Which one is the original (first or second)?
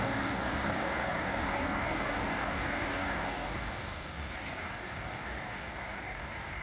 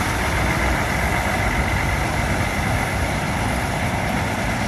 second